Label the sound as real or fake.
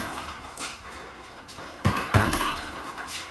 fake